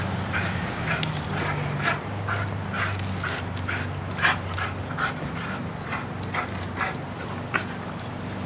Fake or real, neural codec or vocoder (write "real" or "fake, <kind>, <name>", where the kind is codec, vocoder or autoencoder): real